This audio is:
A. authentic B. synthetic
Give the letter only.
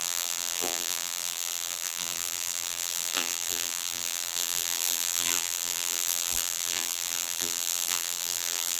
B